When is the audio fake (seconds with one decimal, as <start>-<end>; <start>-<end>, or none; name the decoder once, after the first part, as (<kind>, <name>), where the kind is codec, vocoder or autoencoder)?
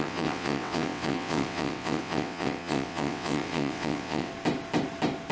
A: 0.0-4.3 (vocoder, WaveNeXt)